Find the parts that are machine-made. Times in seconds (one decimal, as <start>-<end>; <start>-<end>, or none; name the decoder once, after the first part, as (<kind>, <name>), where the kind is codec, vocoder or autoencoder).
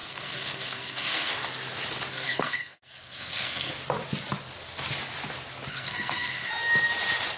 0.0-1.3 (codec, SNAC); 2.1-3.7; 5.7-6.5